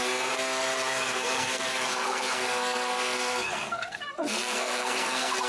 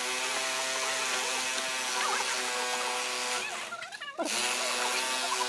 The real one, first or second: second